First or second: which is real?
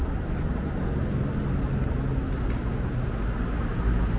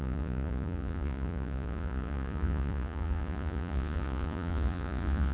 first